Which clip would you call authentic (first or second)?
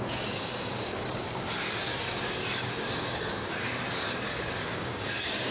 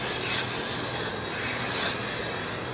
second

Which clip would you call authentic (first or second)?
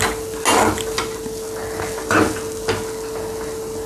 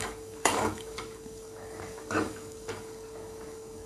first